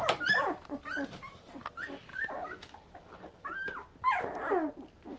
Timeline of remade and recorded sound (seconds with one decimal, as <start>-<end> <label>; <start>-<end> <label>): 0.0-5.2 recorded